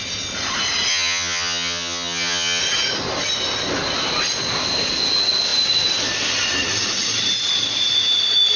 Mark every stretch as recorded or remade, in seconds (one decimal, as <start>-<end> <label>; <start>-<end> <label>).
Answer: 0.0-0.9 recorded; 0.9-2.6 remade; 2.6-8.6 recorded